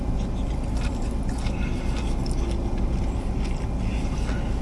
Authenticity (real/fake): real